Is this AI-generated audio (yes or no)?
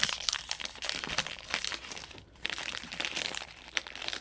yes